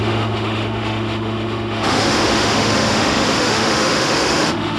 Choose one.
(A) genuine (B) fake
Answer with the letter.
B